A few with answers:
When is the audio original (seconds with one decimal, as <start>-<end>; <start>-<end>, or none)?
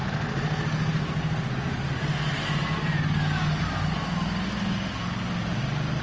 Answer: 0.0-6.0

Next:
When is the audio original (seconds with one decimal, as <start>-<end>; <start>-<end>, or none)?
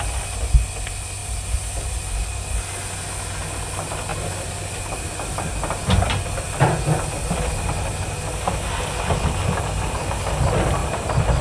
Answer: 0.0-10.8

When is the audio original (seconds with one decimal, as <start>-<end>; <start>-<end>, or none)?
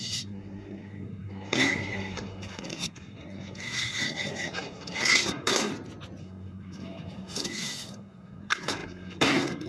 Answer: 5.7-6.2